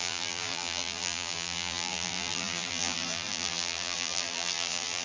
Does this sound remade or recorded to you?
remade